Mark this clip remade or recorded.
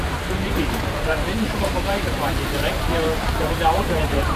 remade